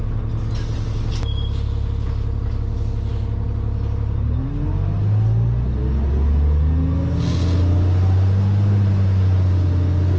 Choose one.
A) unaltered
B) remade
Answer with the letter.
A